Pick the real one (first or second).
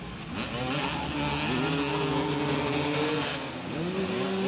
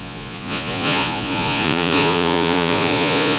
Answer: first